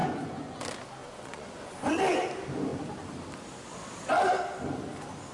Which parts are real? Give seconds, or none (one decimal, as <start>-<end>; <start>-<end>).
0.6-1.0; 1.8-5.3